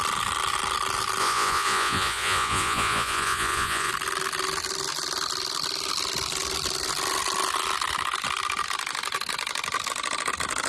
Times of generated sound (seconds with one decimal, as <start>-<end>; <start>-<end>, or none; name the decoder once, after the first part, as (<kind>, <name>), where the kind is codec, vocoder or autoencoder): 1.2-3.9 (vocoder, Vocos)

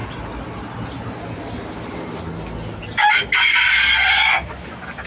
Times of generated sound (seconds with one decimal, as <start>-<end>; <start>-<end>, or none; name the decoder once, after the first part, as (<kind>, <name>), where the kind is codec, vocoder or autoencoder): none